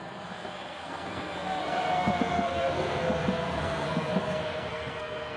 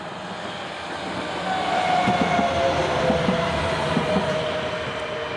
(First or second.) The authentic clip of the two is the second